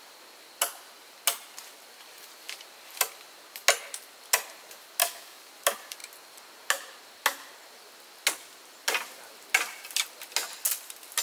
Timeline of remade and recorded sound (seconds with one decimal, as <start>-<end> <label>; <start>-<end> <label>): 0.0-5.0 recorded; 5.0-5.5 remade; 5.5-11.2 recorded